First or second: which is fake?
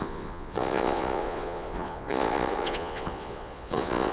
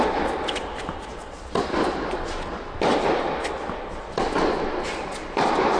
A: first